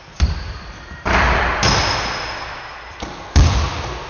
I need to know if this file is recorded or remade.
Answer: recorded